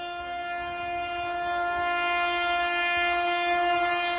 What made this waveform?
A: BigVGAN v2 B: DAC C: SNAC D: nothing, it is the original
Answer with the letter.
D